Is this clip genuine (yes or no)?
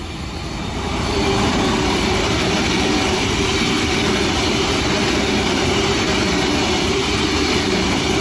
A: no